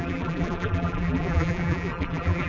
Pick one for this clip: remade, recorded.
remade